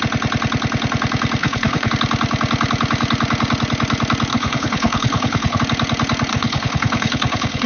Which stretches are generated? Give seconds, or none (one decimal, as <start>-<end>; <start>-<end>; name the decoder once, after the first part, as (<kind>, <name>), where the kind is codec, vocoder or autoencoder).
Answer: 1.4-1.9 (codec, HILCodec); 4.3-5.6; 6.3-7.7